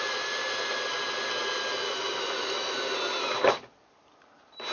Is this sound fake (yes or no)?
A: no